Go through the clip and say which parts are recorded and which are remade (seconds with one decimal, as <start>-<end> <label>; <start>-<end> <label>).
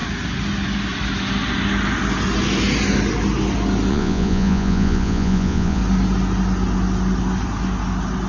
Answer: 0.0-3.9 recorded; 3.9-5.8 remade; 5.8-8.3 recorded